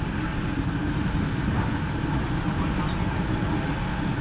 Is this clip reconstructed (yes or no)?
no